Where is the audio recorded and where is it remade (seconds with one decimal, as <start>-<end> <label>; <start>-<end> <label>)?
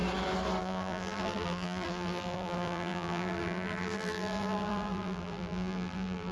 0.0-0.6 recorded; 0.6-6.3 remade